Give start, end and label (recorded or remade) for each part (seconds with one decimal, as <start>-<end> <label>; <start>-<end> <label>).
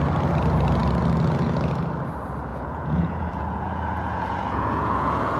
0.0-2.5 recorded; 2.5-5.4 remade